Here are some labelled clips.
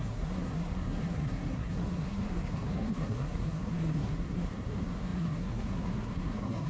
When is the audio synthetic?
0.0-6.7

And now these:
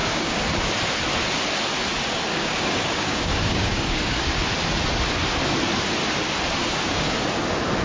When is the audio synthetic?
0.0-0.7; 2.3-4.4; 6.6-7.2

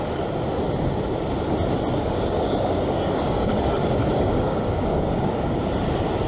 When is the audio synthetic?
2.0-5.8

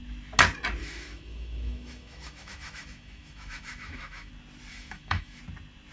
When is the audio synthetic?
0.8-4.3; 4.7-5.4

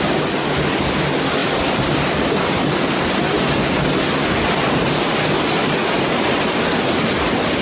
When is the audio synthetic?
1.4-2.8

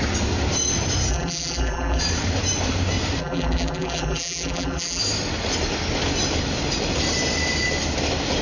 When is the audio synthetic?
1.1-2.0; 3.2-5.0